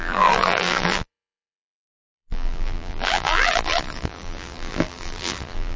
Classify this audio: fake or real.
fake